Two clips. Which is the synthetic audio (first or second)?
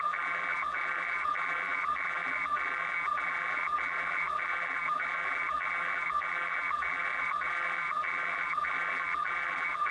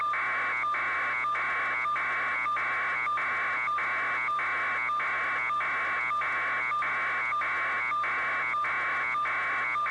first